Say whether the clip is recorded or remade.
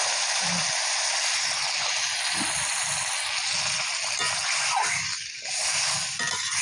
recorded